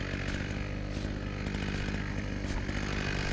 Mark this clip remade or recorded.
recorded